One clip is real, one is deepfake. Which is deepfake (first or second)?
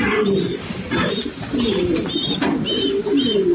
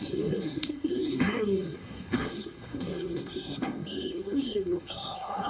second